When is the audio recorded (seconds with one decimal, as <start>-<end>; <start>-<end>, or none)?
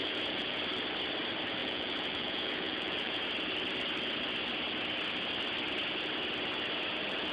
0.6-1.6; 3.2-7.3